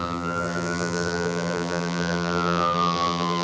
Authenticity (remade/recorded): remade